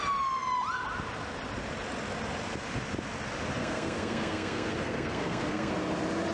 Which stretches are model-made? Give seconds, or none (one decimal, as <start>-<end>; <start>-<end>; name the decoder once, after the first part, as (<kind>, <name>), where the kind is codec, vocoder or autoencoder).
3.6-5.7 (codec, SNAC)

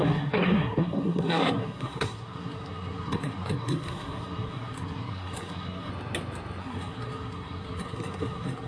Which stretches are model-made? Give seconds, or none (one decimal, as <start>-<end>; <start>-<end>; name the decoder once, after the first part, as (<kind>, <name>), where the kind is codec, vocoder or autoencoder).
0.0-5.9 (codec, SNAC); 6.6-8.7